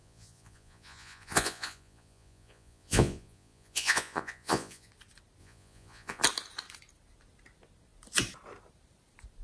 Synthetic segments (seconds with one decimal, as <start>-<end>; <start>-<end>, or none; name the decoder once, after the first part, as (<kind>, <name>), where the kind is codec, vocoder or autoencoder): 0.0-4.9 (vocoder, Vocos); 5.4-6.2